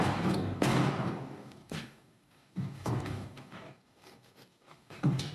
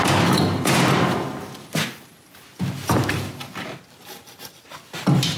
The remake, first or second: first